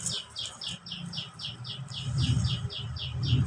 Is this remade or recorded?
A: recorded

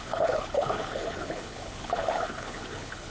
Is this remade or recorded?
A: remade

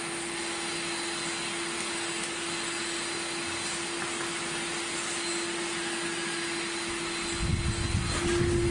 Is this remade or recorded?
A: recorded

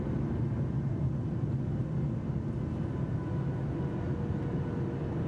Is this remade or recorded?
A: recorded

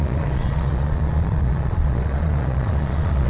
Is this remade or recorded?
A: remade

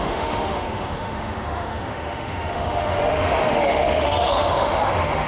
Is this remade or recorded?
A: remade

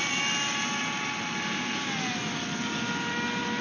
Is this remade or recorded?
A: recorded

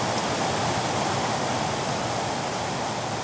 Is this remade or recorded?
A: recorded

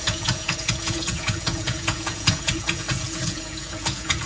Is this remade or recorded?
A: remade